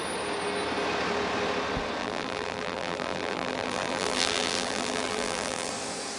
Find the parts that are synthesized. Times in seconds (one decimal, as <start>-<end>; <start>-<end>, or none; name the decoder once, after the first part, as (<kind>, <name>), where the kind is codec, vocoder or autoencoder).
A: 2.0-5.7 (vocoder, BigVGAN v2)